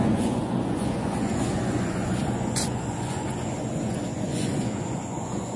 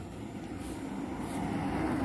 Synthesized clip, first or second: first